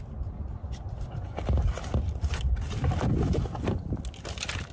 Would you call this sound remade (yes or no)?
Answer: no